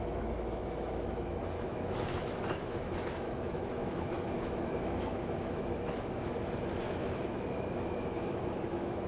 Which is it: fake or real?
fake